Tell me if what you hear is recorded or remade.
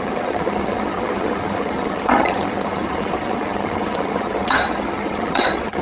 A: remade